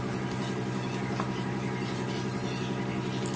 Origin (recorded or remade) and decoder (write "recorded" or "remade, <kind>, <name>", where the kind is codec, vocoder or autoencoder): recorded